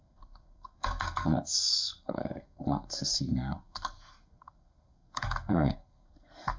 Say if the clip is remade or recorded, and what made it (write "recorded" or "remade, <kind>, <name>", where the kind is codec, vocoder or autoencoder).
remade, codec, SNAC